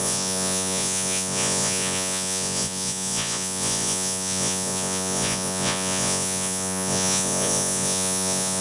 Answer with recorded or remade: remade